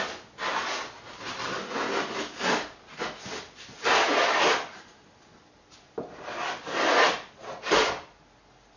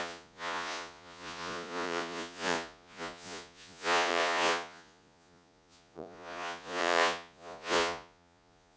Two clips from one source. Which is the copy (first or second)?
second